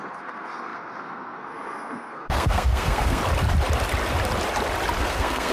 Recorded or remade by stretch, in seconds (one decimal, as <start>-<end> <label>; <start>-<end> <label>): 0.0-3.2 remade; 3.2-5.0 recorded; 5.0-5.5 remade